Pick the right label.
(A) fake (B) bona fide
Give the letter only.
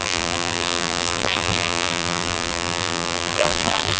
A